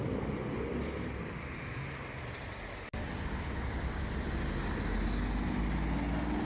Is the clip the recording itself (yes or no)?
yes